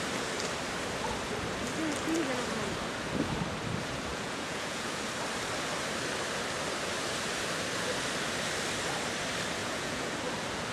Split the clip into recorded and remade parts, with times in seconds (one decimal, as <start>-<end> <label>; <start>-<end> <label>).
0.0-4.1 recorded; 4.1-5.0 remade; 5.0-9.6 recorded; 9.6-10.1 remade; 10.1-10.7 recorded